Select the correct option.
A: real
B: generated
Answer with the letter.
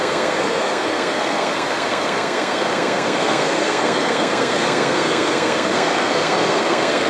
B